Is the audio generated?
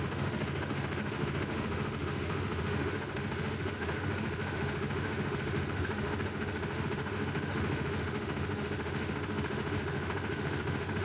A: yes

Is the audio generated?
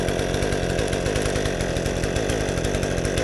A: no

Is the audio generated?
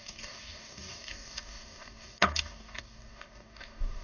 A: yes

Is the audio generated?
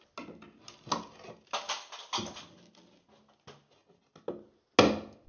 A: no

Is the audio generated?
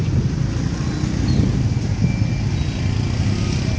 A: no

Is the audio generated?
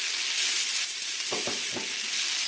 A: no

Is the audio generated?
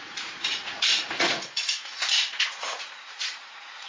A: yes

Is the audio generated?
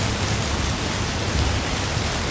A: no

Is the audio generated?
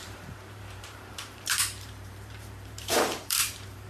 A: yes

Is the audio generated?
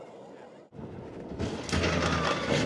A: no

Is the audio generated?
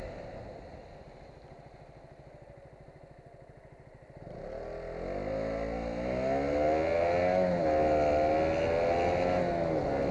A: no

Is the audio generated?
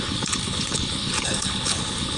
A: yes